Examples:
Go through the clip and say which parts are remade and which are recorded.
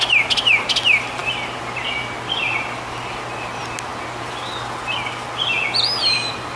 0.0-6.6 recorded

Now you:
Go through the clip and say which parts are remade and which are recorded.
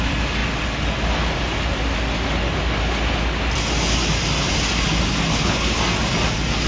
0.0-5.3 recorded; 5.3-5.8 remade; 5.8-6.7 recorded